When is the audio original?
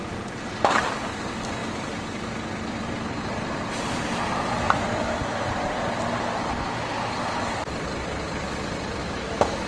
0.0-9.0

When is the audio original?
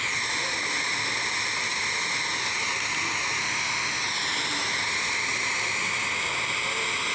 0.0-3.4; 4.0-7.1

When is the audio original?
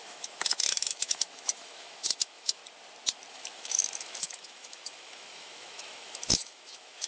2.6-3.3